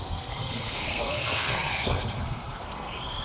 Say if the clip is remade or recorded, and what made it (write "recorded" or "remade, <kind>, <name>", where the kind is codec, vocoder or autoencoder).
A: remade, codec, SNAC